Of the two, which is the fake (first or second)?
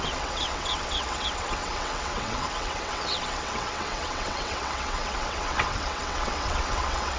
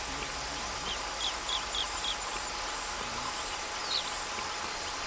first